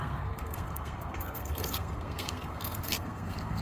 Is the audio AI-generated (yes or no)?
yes